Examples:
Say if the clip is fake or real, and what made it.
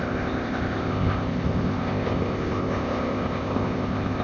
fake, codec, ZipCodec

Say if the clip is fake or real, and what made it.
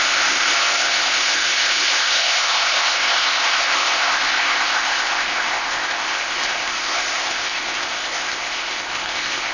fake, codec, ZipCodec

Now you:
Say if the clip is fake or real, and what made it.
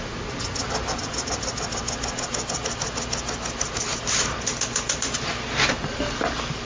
real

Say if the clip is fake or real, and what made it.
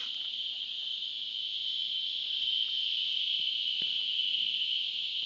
real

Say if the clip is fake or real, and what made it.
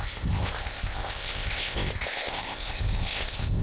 fake, codec, ZipCodec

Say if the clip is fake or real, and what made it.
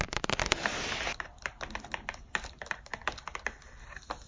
real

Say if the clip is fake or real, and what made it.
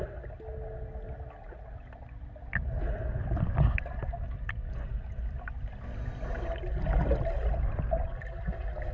real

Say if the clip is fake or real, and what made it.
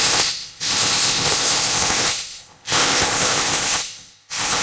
fake, codec, ZipCodec